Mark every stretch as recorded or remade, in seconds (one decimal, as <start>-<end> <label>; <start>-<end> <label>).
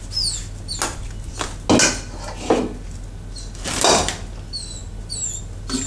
0.0-5.9 recorded